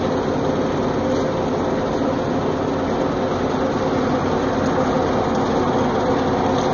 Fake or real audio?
real